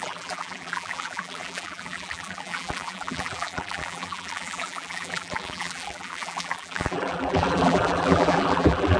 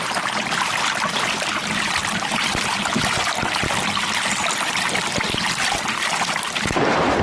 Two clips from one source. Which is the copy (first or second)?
first